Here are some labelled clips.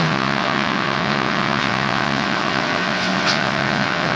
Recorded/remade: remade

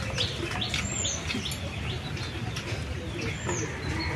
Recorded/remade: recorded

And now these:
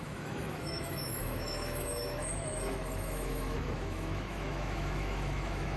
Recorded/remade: remade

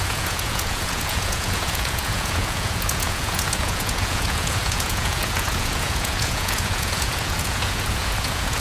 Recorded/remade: remade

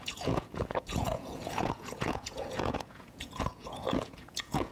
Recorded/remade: remade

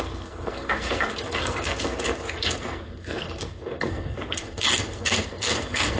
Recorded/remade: remade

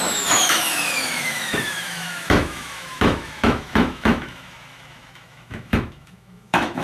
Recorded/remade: remade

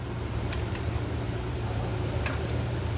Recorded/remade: remade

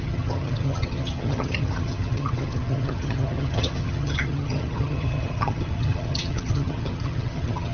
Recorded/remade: remade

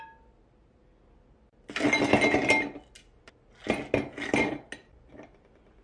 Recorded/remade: recorded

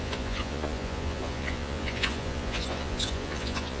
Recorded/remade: remade